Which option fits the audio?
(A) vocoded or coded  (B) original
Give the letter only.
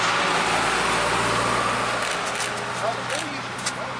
B